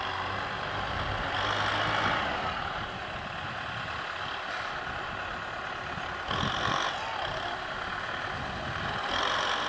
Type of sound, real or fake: real